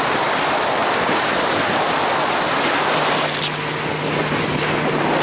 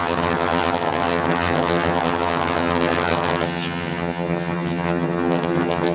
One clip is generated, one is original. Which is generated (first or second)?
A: second